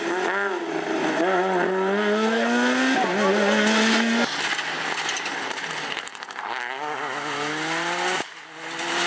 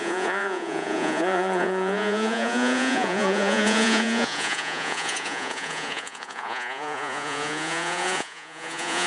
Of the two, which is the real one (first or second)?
first